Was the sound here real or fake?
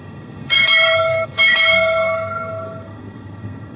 fake